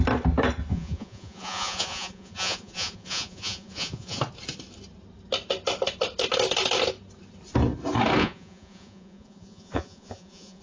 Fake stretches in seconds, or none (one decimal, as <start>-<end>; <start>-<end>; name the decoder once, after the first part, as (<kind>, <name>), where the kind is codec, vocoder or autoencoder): 0.7-4.2 (vocoder, Vocos); 8.2-10.6